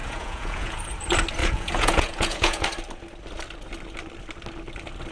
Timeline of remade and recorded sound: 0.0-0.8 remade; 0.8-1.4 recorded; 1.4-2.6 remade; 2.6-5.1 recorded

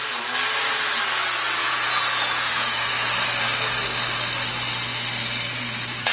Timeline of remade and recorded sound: 0.0-1.6 recorded; 1.6-3.1 remade; 3.1-6.1 recorded

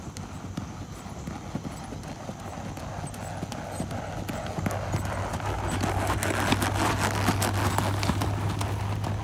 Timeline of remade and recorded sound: 0.0-9.2 recorded